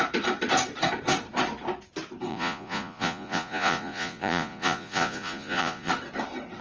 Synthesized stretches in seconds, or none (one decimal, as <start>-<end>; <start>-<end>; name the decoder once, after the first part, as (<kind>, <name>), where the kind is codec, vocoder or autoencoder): 2.3-5.9 (vocoder, Vocos)